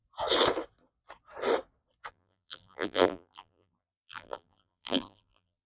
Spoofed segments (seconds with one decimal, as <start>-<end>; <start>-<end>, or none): 2.1-5.7